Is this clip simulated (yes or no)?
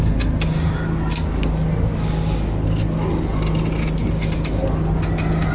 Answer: no